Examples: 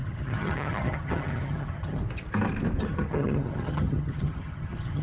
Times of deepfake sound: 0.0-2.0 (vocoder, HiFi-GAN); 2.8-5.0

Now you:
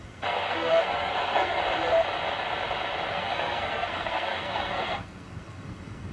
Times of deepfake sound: 0.0-1.6 (codec, SNAC); 3.1-6.1

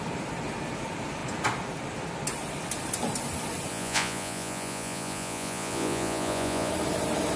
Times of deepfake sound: 3.7-6.7 (vocoder, Vocos)

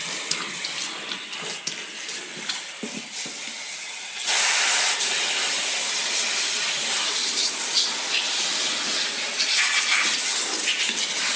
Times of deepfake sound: none

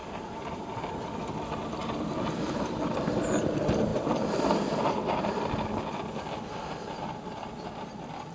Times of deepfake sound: 0.0-1.2 (vocoder, BigVGAN v2); 1.8-2.9; 3.9-5.4

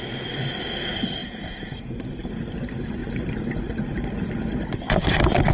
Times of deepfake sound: 1.2-1.8 (vocoder, BigVGAN v2)